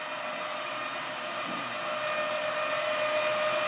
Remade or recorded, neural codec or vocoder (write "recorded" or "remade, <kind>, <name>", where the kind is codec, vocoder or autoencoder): recorded